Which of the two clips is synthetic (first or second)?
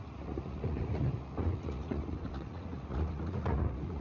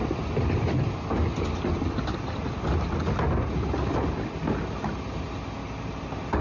first